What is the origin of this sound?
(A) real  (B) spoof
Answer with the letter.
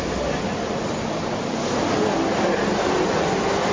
A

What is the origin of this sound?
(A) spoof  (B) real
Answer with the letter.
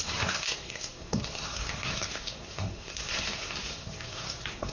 A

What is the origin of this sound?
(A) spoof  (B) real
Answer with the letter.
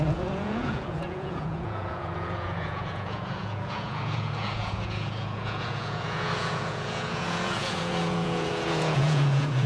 A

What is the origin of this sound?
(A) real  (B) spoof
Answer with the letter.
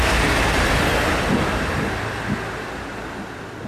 A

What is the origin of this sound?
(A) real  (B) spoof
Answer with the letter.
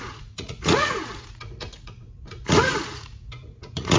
B